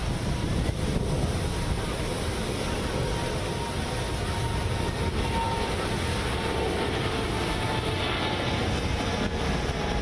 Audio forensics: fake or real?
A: real